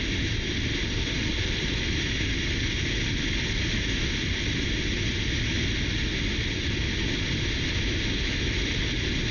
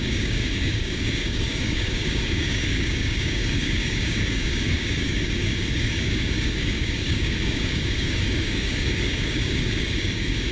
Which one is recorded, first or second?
first